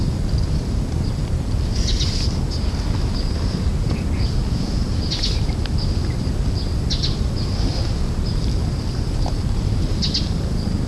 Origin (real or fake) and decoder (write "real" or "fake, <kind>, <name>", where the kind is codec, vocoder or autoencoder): real